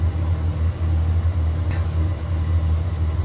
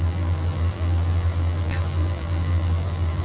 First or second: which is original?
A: first